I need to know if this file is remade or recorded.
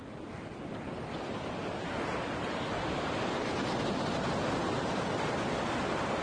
remade